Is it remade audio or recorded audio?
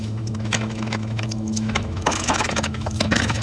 remade